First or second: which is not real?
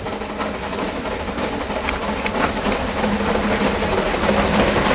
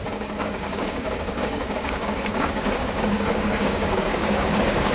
second